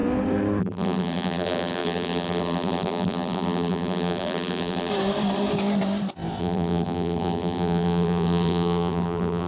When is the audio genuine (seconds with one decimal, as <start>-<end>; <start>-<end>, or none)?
0.0-0.6; 4.9-6.4